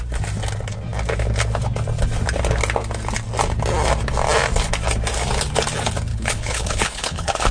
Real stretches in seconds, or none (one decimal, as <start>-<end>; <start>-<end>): 0.0-6.1